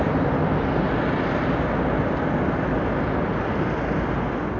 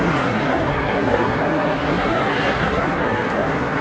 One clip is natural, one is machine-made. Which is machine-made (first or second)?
second